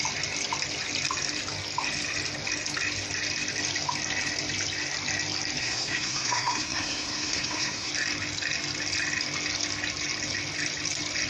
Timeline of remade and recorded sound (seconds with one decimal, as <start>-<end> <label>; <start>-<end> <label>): 0.0-5.6 recorded; 5.6-7.9 remade; 7.9-11.3 recorded